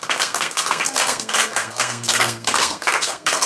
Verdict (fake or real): fake